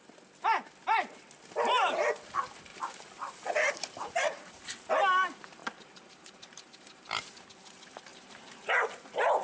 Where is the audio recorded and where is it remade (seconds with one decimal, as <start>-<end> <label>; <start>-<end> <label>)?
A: 0.0-2.7 recorded; 2.7-4.5 remade; 4.5-5.6 recorded; 5.6-7.4 remade; 7.4-8.1 recorded; 8.1-8.7 remade; 8.7-9.4 recorded